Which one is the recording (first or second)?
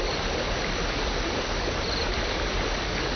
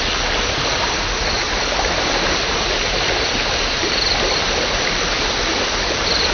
first